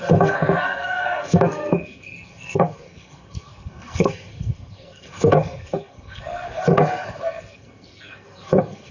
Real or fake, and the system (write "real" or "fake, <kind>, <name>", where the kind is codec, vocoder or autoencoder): fake, codec, SNAC